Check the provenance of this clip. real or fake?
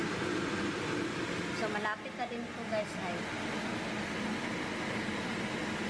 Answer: real